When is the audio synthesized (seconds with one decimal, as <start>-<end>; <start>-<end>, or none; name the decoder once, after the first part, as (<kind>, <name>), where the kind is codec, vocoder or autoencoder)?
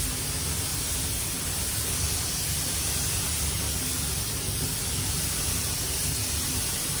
none